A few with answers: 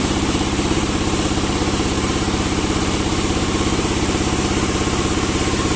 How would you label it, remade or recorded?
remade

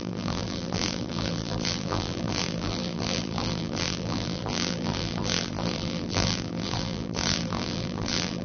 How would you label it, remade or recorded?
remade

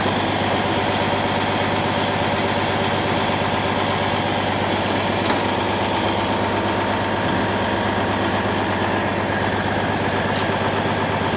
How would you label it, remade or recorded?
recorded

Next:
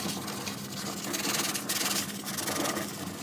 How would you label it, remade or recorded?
recorded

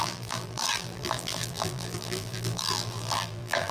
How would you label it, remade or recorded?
remade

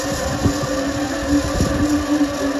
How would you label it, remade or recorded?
recorded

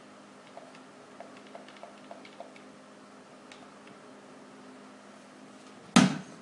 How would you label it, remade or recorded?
recorded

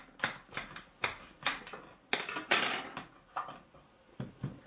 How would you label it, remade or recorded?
recorded